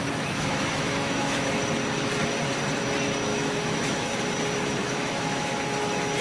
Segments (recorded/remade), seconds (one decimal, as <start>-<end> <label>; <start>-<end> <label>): 0.0-1.6 remade; 1.6-3.3 recorded; 3.3-4.2 remade; 4.2-4.8 recorded; 4.8-5.6 remade; 5.6-6.2 recorded